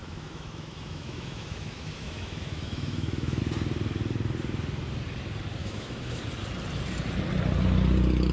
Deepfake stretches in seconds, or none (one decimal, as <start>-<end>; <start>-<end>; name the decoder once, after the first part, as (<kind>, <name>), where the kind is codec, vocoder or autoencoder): 0.0-3.4 (autoencoder, DAC-VAE); 5.6-6.2

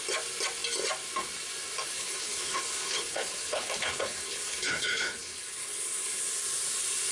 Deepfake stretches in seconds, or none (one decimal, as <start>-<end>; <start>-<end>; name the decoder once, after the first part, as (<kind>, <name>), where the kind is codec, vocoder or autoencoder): 2.0-6.2 (codec, HILCodec)

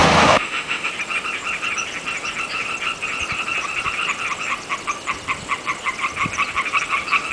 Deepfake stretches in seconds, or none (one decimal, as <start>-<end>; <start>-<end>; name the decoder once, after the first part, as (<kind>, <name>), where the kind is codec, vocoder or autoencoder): 0.0-0.9 (autoencoder, DAC-VAE)